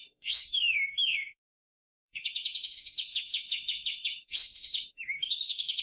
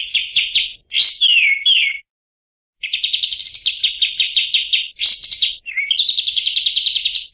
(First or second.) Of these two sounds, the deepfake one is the first